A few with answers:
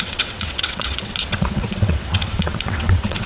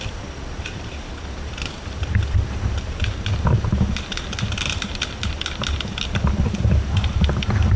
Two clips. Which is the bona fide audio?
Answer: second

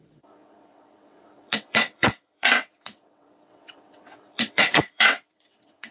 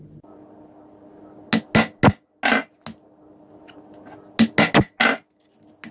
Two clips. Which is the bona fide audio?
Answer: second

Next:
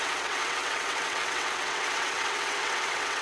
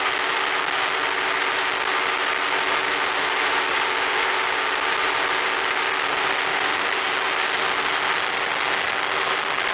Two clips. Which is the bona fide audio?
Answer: second